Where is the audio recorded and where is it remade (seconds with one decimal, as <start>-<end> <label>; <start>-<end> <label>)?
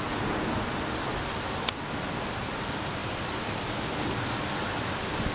0.0-5.3 recorded